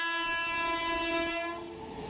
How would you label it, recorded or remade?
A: recorded